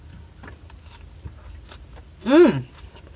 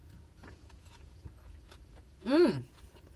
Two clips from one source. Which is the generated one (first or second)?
second